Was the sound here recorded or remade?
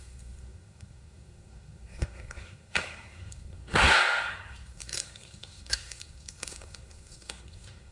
remade